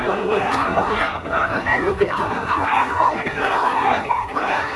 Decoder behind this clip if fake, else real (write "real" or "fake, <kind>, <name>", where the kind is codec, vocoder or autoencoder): fake, codec, SNAC